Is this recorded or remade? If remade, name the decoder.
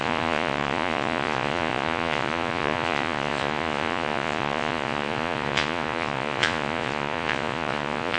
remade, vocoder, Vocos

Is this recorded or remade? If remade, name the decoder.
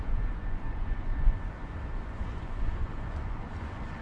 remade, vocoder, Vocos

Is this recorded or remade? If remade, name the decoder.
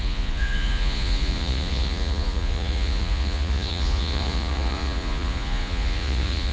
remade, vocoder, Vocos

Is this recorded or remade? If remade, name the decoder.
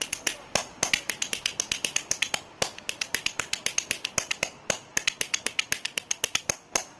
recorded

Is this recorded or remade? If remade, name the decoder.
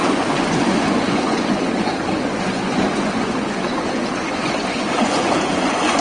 remade, vocoder, Vocos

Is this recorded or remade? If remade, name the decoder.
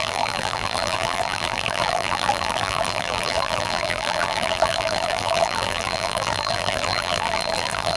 remade, vocoder, BigVGAN v2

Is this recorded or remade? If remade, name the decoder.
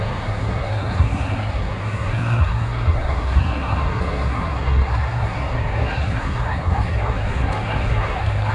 remade, codec, SNAC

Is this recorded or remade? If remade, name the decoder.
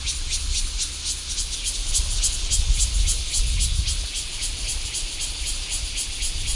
recorded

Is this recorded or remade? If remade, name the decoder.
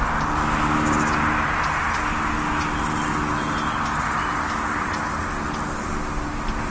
recorded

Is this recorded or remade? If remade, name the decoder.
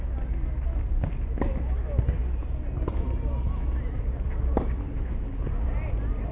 recorded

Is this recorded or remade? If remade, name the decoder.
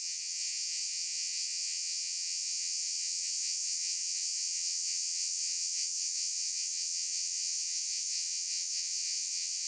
remade, vocoder, Vocos